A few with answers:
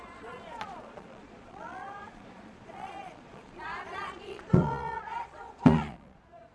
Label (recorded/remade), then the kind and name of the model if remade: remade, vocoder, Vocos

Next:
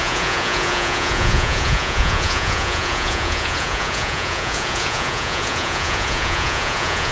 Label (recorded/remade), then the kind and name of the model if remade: remade, vocoder, Vocos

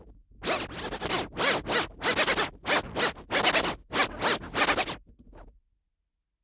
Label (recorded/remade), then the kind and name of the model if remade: recorded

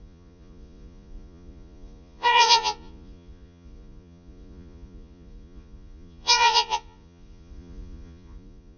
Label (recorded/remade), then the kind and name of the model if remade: remade, vocoder, Vocos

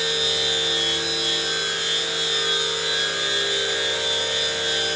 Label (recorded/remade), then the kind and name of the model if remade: recorded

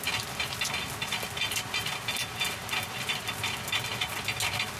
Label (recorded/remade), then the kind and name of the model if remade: recorded